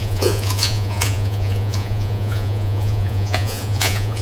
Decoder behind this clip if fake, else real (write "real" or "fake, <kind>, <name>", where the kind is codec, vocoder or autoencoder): fake, vocoder, Vocos